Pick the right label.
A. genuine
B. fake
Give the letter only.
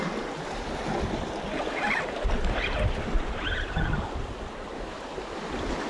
A